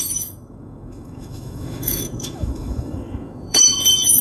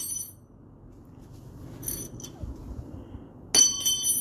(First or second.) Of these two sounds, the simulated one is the first